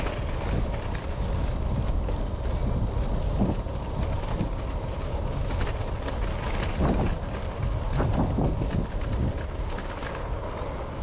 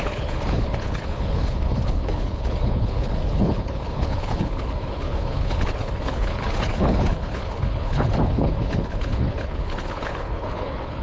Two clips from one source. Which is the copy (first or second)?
second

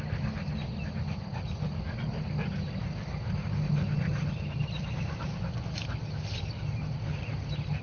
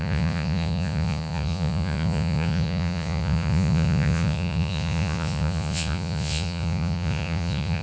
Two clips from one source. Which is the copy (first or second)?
second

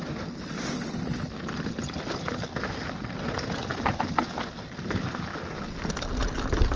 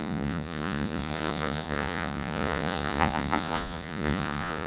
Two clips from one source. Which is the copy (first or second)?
second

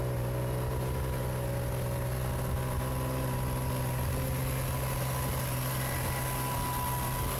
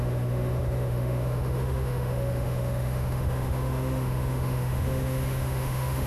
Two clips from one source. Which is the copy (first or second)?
second